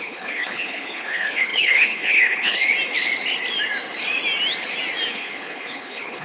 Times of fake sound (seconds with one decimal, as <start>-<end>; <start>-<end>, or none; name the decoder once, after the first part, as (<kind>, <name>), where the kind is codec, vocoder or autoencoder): 0.0-2.7 (codec, HILCodec); 5.1-6.2